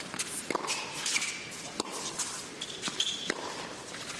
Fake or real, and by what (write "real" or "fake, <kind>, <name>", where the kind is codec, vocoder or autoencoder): real